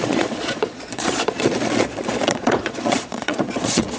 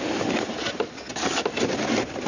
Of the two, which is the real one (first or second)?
second